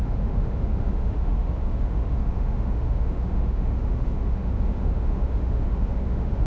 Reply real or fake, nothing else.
fake